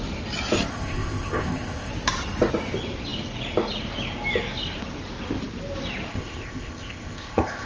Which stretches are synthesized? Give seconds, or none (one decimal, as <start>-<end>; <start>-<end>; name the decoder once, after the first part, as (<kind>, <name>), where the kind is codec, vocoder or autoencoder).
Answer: 0.7-1.9 (codec, ZipCodec); 6.1-7.7